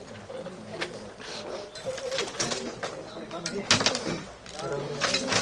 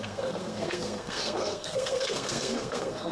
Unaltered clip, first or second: first